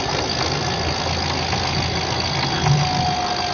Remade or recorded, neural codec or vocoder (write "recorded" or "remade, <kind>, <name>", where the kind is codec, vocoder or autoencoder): recorded